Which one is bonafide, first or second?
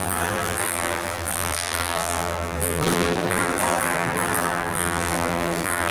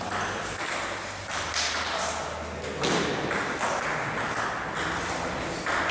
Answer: second